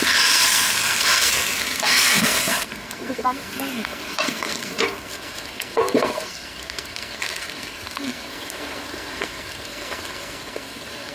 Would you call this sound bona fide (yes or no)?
no